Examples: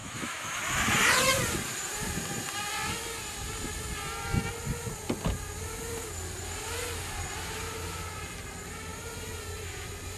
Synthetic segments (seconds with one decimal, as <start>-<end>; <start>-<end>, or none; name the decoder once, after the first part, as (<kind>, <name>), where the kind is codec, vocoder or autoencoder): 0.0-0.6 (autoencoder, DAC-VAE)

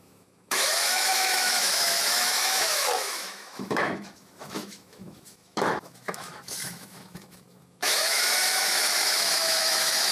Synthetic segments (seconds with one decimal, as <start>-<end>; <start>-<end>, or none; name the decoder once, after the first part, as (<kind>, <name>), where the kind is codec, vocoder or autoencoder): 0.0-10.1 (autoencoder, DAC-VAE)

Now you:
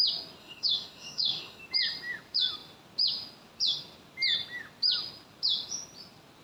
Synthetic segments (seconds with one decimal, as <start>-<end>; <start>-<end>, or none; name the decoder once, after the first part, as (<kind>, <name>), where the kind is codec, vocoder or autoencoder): 0.4-1.6 (autoencoder, DAC-VAE)

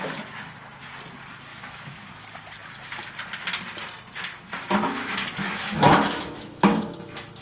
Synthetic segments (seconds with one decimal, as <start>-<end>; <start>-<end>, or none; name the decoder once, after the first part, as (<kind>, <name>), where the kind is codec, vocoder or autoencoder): 1.5-2.1 (autoencoder, DAC-VAE); 5.4-6.8

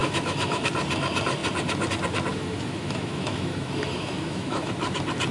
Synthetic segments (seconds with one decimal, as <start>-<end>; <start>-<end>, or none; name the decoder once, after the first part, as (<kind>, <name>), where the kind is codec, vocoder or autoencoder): 0.0-0.7 (autoencoder, DAC-VAE); 2.3-4.7

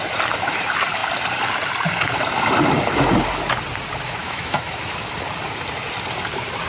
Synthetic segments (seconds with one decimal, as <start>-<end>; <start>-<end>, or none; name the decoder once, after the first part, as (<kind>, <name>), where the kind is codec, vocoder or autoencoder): 4.2-5.0 (autoencoder, DAC-VAE)